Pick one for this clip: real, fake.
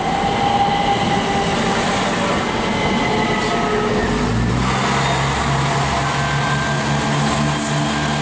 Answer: real